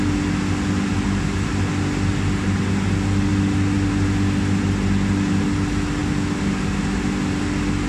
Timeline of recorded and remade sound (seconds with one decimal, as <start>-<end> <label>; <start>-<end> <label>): 0.0-7.9 recorded

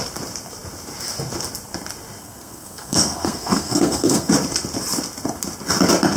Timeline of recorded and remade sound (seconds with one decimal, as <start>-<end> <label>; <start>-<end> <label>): 0.0-2.2 recorded; 2.2-4.3 remade; 4.3-6.2 recorded

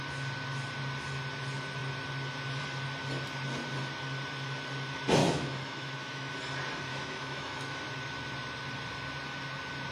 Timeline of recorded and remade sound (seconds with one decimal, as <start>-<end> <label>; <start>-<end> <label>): 0.0-5.2 recorded; 5.2-6.3 remade; 6.3-6.9 recorded; 6.9-7.8 remade; 7.8-9.9 recorded

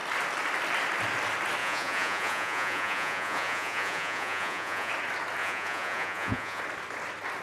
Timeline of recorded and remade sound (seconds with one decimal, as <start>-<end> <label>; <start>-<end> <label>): 0.0-1.6 recorded; 1.6-4.9 remade; 4.9-5.4 recorded; 5.4-6.6 remade; 6.6-7.4 recorded

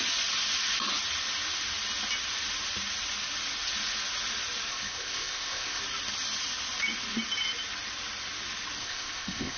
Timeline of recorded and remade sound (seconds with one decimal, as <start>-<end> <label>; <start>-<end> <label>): 0.0-4.7 recorded; 4.7-5.8 remade; 5.8-8.8 recorded; 8.8-9.6 remade